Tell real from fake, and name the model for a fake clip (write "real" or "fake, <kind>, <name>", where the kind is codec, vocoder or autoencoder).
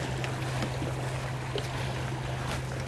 real